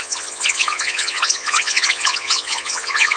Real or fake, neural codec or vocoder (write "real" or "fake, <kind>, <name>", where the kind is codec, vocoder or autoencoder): fake, vocoder, Vocos